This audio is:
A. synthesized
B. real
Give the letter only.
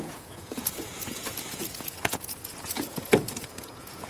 A